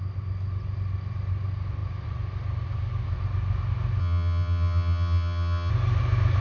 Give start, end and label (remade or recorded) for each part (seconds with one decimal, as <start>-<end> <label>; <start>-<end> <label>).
0.0-4.0 recorded; 4.0-5.7 remade; 5.7-6.4 recorded